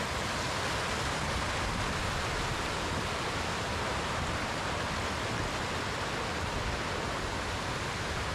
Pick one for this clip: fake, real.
real